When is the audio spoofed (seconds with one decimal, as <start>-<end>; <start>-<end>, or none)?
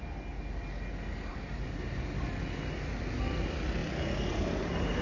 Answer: 1.3-1.9